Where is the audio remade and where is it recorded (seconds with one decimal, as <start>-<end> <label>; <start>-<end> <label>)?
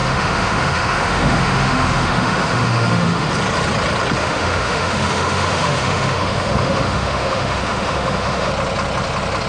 0.0-3.3 remade; 3.3-4.2 recorded; 4.2-8.5 remade; 8.5-9.5 recorded